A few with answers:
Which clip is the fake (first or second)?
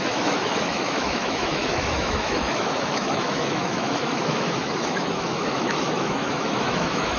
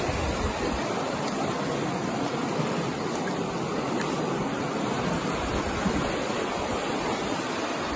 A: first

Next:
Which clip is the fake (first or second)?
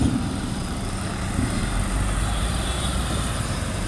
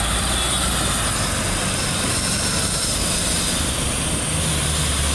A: first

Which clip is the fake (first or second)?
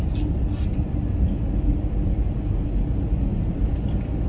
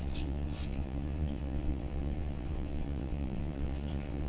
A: second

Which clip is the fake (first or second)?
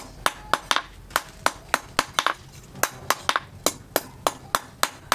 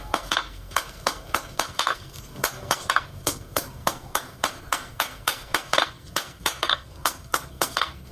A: second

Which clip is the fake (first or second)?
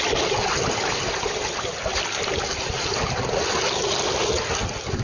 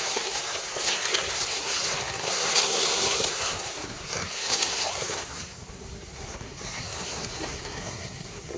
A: second